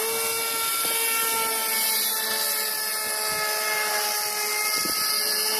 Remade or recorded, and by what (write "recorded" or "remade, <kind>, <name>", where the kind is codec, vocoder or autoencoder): recorded